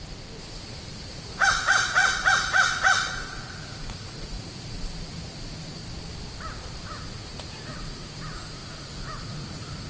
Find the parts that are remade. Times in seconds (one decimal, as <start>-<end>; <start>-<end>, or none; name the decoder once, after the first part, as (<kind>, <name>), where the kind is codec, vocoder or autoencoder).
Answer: 0.0-5.8 (vocoder, Vocos); 6.8-9.9